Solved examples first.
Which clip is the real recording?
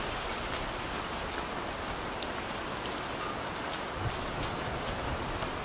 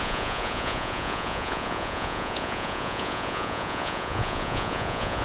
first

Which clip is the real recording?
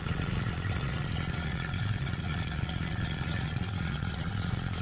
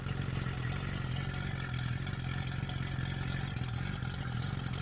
second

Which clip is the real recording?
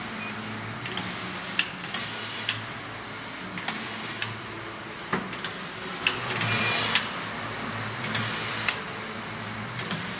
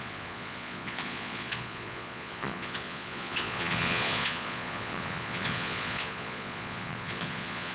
first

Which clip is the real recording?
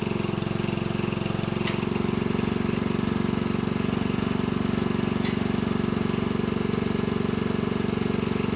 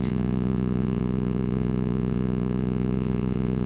first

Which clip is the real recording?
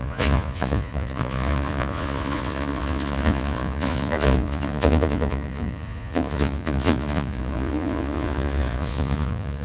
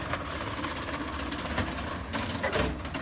second